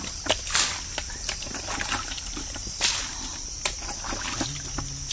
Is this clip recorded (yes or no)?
yes